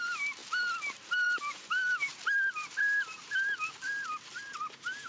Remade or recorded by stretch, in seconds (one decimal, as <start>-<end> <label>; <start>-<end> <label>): 0.0-0.4 remade; 0.4-0.9 recorded; 0.9-5.1 remade